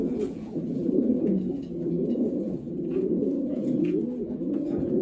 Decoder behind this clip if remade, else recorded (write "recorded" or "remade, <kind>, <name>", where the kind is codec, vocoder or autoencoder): remade, vocoder, Vocos